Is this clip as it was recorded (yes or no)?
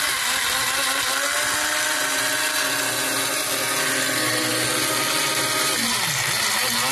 yes